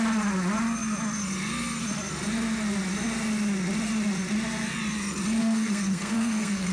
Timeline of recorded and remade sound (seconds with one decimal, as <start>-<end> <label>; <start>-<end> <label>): 0.0-5.4 recorded; 5.4-6.7 remade